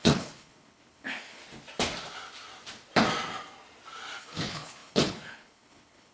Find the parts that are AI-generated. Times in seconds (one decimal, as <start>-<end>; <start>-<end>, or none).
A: 0.0-1.4; 4.2-6.1